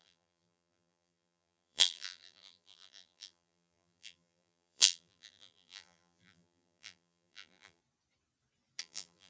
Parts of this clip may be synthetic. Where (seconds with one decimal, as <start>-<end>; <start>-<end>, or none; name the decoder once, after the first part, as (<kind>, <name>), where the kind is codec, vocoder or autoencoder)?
0.0-7.8 (vocoder, BigVGAN v2); 8.8-9.3

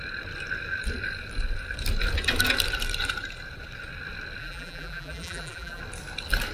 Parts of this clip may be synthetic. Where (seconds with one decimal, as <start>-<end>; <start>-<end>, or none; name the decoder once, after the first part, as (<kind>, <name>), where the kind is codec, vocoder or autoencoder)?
4.4-5.8 (vocoder, BigVGAN v2)

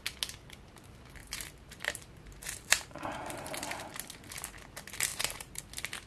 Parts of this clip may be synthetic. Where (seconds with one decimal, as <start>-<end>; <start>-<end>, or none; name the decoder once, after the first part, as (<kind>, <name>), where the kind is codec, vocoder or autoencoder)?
1.2-3.9 (vocoder, BigVGAN v2); 5.1-5.6

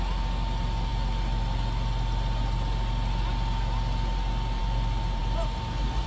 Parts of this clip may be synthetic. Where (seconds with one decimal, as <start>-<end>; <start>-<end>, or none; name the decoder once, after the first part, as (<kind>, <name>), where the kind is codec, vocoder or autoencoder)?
none

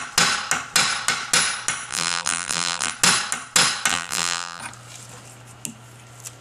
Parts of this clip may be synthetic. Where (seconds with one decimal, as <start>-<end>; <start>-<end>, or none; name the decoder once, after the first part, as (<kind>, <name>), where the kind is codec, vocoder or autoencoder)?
1.9-2.9 (vocoder, BigVGAN v2); 3.9-4.6

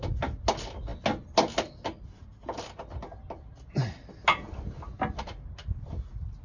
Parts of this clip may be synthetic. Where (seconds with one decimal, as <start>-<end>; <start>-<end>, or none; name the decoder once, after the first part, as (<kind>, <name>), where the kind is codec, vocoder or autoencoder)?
none